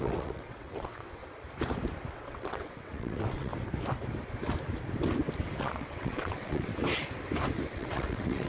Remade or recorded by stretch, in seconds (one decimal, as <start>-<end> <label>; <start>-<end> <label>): 0.0-1.2 remade; 1.2-2.1 recorded; 2.1-3.5 remade; 3.5-5.6 recorded; 5.6-6.7 remade; 6.7-7.7 recorded; 7.7-8.5 remade